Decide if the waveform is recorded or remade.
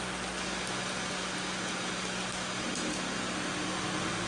recorded